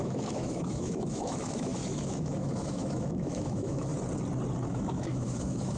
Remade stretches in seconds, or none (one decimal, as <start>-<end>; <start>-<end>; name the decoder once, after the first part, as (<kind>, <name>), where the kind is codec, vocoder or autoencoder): 0.0-3.9 (autoencoder, DAC-VAE); 4.7-5.8